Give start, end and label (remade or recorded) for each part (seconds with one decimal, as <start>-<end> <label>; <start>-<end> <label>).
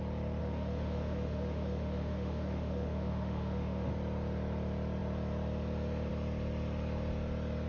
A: 0.0-0.4 recorded; 0.4-3.9 remade; 3.9-7.7 recorded